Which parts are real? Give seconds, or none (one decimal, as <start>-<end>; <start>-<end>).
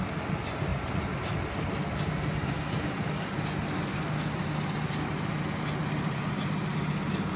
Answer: 0.0-7.4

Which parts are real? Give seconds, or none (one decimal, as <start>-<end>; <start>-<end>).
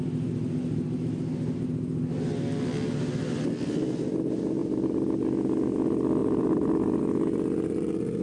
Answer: 0.0-6.2; 7.0-8.2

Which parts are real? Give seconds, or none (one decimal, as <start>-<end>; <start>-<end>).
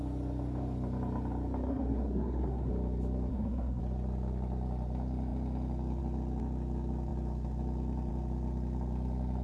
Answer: 0.0-1.7; 2.7-3.3; 3.8-9.4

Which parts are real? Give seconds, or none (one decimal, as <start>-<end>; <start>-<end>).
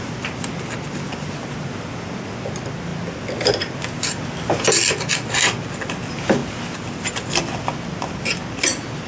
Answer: 0.0-9.1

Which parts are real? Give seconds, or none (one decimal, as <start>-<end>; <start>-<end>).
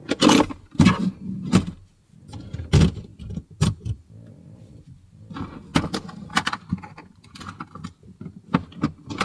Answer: 0.0-9.2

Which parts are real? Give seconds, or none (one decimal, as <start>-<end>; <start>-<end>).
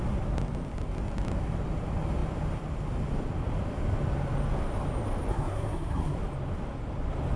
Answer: 0.0-5.3; 6.2-7.4